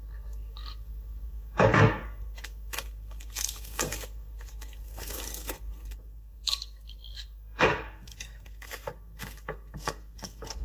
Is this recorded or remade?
remade